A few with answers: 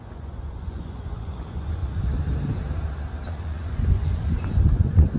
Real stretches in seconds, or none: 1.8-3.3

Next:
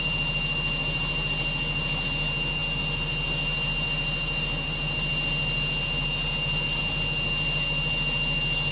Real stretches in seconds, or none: 0.0-8.7

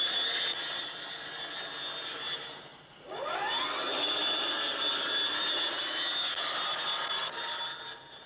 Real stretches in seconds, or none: 0.0-8.3